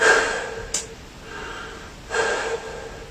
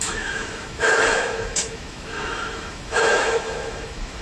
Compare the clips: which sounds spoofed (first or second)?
second